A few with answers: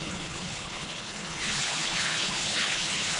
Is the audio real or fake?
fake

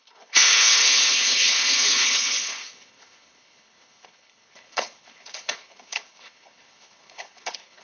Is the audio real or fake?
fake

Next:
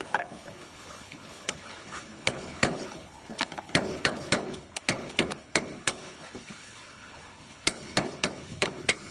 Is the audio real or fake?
fake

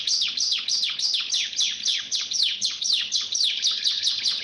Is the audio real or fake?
fake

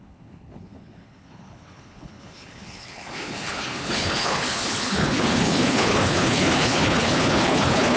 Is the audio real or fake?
fake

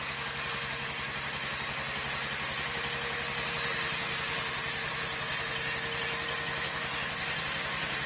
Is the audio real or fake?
real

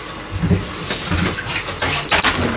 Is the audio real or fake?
real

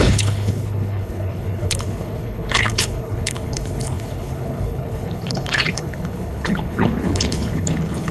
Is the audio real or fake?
fake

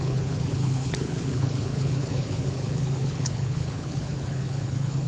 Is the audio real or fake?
fake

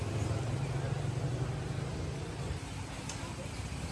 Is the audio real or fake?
real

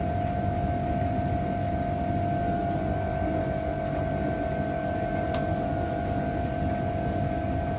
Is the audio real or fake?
real